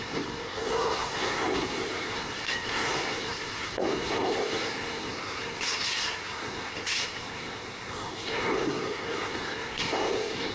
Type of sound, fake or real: fake